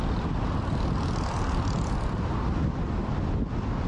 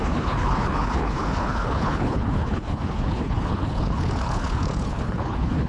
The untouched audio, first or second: first